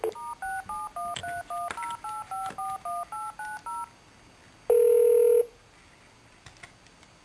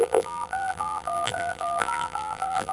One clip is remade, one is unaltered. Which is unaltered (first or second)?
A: first